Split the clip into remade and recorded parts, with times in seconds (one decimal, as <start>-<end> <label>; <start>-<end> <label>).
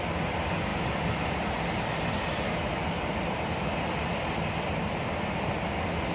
0.0-6.1 recorded